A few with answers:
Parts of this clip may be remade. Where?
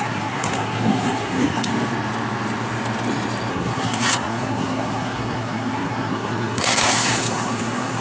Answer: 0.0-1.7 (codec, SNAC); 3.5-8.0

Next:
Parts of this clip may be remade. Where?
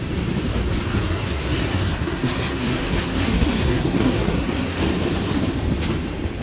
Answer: 1.0-4.8 (codec, SNAC)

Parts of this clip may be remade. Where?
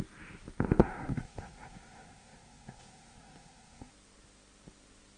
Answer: 0.8-3.9 (codec, SNAC)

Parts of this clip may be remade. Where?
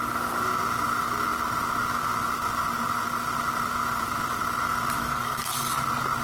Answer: 5.0-5.7 (codec, SNAC)